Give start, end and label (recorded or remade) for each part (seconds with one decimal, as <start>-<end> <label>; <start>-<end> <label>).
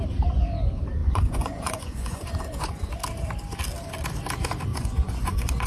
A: 0.0-1.0 recorded; 1.0-2.9 remade; 2.9-4.7 recorded; 4.7-5.7 remade